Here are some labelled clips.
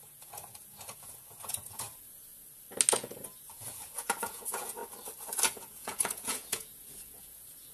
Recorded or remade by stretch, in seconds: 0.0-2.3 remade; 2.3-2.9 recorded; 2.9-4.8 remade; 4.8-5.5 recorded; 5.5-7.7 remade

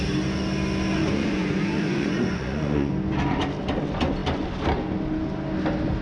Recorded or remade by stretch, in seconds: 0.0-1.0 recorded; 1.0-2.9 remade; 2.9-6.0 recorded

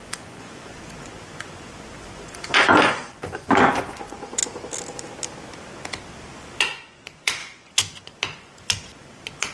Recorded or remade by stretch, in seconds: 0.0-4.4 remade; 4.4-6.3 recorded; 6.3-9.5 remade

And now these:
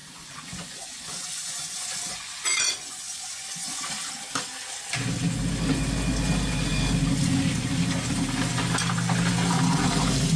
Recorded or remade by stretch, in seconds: 0.0-3.8 remade; 3.8-10.4 recorded

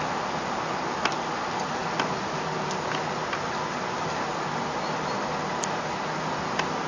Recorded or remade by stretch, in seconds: 0.0-6.9 recorded

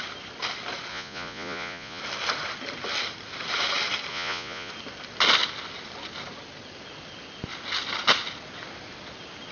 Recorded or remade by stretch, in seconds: 0.0-0.9 recorded; 0.9-2.0 remade; 2.0-4.1 recorded; 4.1-4.7 remade; 4.7-9.5 recorded

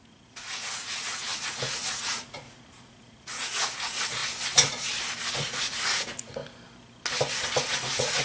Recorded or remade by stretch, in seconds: 0.0-4.2 remade; 4.2-5.3 recorded; 5.3-6.4 remade; 6.4-7.7 recorded; 7.7-8.2 remade